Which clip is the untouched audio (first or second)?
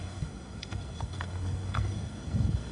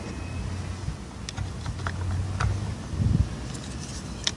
second